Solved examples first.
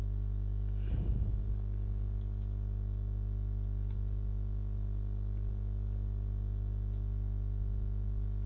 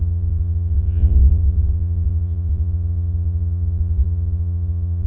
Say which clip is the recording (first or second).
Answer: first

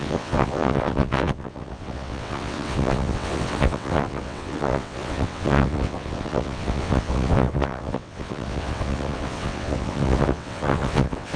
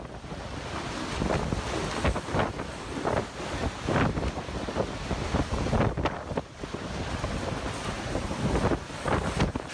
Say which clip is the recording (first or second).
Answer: second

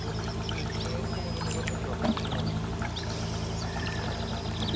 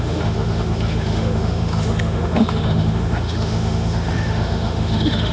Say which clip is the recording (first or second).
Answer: first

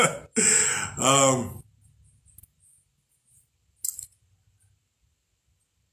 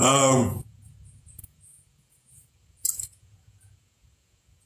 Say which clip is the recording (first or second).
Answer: first